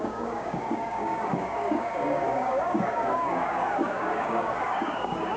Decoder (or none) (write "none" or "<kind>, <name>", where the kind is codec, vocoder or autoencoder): codec, DAC